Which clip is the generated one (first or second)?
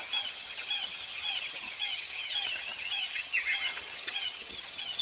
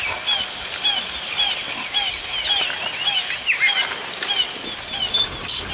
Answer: first